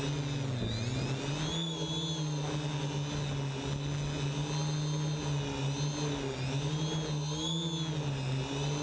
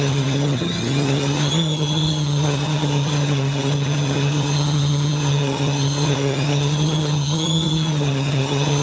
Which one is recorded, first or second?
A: first